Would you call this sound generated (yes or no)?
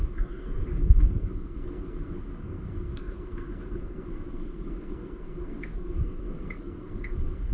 yes